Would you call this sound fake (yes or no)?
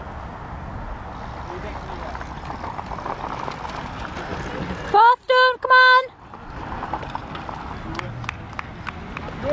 no